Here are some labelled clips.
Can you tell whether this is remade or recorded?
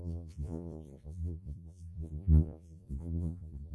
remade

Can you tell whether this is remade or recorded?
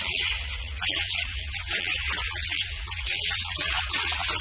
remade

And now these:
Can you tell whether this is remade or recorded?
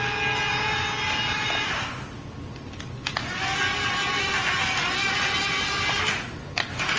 recorded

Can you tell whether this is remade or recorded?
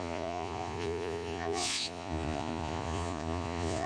remade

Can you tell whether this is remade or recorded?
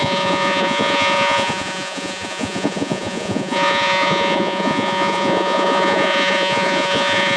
remade